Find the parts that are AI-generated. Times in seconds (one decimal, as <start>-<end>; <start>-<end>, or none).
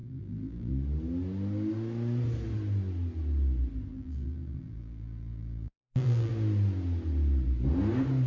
0.0-0.7; 3.9-6.3